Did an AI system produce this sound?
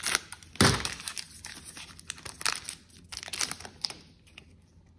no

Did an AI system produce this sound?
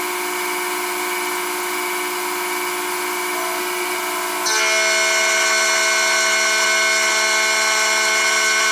no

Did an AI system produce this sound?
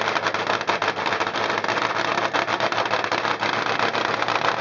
no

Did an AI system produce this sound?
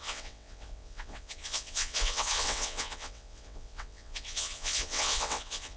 yes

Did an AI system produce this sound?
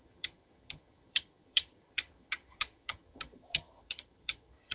yes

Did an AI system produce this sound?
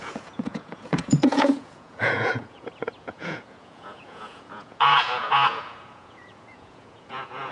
yes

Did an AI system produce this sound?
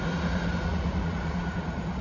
yes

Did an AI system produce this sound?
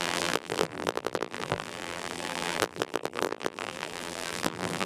yes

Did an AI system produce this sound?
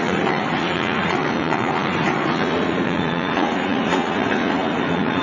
yes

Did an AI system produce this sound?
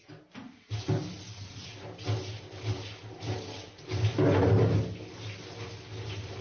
no